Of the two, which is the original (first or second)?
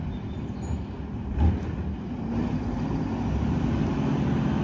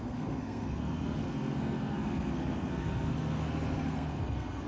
first